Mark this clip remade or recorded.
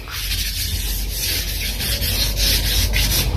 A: recorded